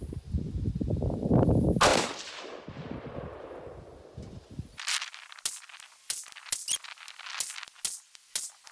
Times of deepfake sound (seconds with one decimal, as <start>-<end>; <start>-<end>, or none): none

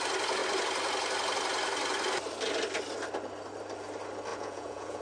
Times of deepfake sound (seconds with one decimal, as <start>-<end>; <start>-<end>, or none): 4.3-5.0

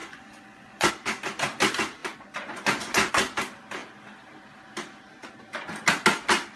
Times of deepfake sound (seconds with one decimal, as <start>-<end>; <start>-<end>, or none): 0.0-0.9; 2.0-3.1

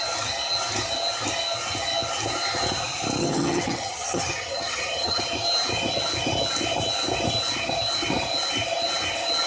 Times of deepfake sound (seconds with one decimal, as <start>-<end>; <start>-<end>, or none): 3.2-5.2